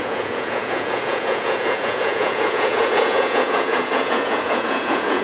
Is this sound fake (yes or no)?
yes